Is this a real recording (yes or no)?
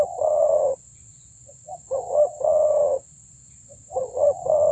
no